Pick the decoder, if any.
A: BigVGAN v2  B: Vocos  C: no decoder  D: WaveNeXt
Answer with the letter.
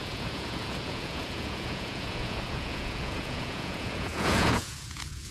B